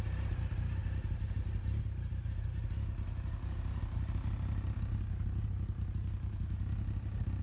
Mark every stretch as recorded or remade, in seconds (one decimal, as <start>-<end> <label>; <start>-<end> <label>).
0.0-7.4 recorded